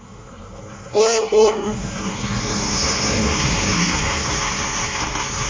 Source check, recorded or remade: remade